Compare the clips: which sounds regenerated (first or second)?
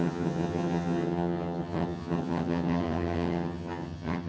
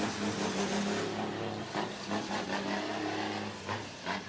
first